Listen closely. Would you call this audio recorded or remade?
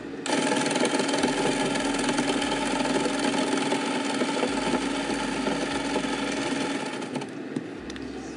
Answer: recorded